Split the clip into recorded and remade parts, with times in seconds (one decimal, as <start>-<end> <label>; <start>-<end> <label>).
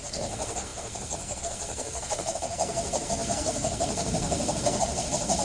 0.0-5.4 remade